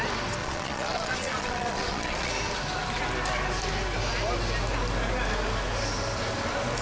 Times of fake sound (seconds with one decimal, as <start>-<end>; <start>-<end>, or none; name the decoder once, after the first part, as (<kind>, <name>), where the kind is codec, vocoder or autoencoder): 0.4-2.3 (vocoder, Vocos)